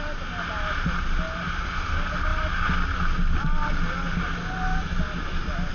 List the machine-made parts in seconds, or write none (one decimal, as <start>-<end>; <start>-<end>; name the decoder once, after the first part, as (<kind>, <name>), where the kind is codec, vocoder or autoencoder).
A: none